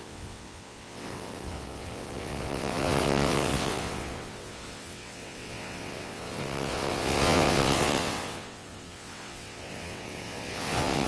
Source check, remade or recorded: remade